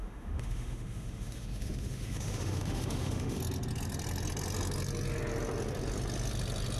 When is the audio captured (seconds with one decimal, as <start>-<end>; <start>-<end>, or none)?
3.4-6.8